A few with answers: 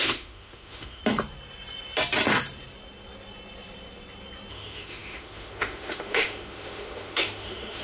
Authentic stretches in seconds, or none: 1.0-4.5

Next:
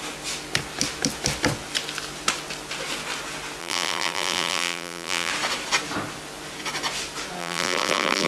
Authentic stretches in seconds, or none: 0.0-3.6; 5.3-7.4